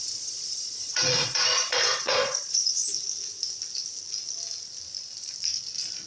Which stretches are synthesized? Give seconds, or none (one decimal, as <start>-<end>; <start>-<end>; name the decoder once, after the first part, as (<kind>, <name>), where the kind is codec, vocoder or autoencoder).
0.0-2.9 (vocoder, Vocos)